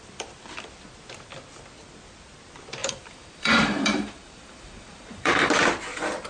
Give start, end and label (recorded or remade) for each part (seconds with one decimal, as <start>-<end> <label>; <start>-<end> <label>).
0.0-2.8 recorded; 2.8-5.5 remade; 5.5-6.3 recorded